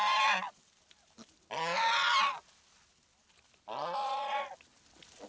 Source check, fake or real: real